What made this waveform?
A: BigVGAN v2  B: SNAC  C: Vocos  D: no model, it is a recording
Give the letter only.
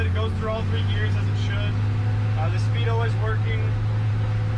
D